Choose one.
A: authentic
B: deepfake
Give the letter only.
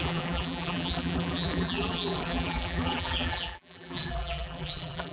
B